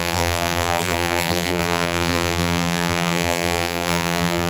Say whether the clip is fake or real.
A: fake